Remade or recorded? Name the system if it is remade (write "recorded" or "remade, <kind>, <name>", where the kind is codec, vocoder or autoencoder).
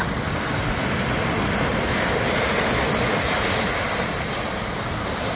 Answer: recorded